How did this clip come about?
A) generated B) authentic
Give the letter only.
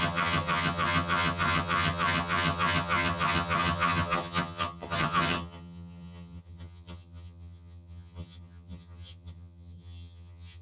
A